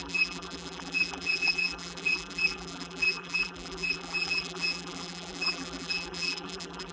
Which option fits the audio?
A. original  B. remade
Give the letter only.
B